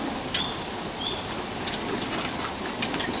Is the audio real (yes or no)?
yes